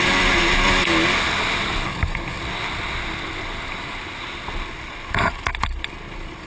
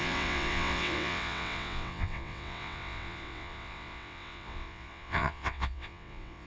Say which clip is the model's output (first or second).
second